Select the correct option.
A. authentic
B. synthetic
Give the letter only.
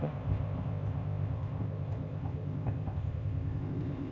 B